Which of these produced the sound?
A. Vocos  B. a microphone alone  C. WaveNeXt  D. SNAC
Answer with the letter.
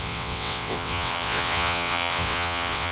C